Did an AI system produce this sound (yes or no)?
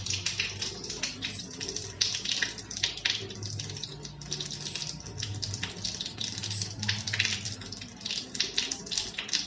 no